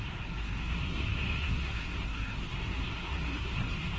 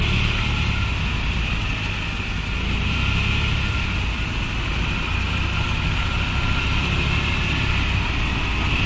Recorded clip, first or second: second